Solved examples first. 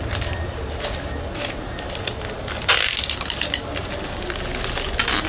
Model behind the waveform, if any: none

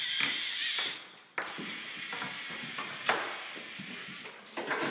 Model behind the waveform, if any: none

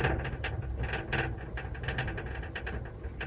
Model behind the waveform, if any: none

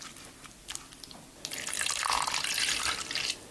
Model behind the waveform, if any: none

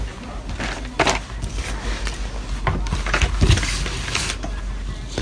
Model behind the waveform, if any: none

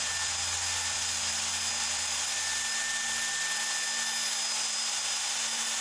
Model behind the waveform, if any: none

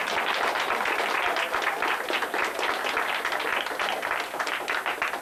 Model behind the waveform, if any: none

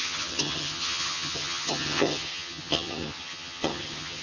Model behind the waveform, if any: vocoder, HiFi-GAN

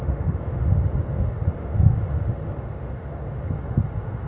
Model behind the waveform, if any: autoencoder, DAC-VAE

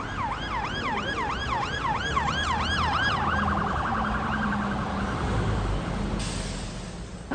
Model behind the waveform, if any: none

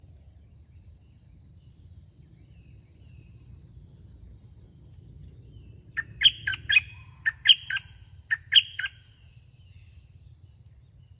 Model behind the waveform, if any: none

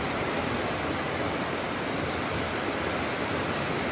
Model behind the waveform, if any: vocoder, BigVGAN v2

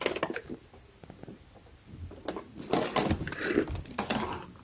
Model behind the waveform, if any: none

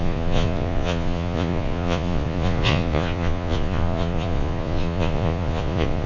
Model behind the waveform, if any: vocoder, Vocos